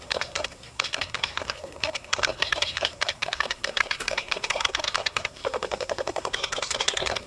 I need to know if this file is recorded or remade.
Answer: remade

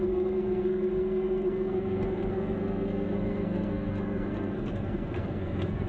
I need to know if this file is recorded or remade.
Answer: remade